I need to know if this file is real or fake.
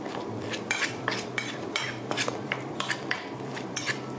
fake